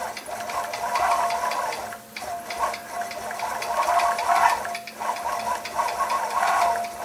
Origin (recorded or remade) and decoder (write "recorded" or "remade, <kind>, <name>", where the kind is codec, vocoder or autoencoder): recorded